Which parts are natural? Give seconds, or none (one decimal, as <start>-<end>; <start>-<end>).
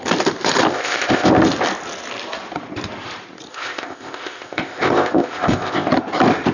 0.0-0.7; 1.3-3.5; 5.9-6.5